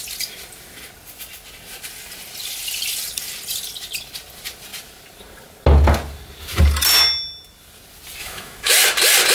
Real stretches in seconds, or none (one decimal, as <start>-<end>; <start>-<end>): 0.0-8.2; 8.7-9.3